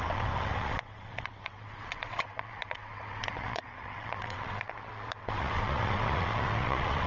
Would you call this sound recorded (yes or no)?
no